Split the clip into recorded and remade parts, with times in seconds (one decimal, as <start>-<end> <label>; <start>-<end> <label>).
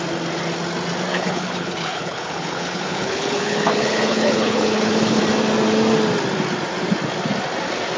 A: 0.0-1.1 recorded; 1.1-5.2 remade; 5.2-8.0 recorded